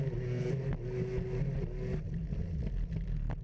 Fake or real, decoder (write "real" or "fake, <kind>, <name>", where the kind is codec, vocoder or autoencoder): real